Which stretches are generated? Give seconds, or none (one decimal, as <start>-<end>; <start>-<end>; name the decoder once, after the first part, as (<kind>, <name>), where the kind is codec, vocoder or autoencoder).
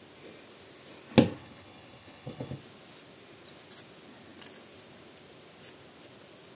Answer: 1.4-2.6 (codec, HILCodec)